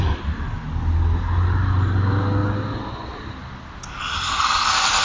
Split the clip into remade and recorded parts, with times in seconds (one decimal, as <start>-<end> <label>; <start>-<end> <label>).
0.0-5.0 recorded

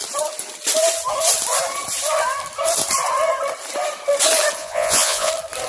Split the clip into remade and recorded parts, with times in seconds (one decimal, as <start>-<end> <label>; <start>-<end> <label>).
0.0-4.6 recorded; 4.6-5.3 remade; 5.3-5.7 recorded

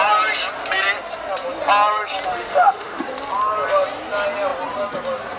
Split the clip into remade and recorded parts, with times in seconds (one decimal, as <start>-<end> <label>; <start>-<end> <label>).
0.0-2.3 recorded; 2.3-3.0 remade; 3.0-5.4 recorded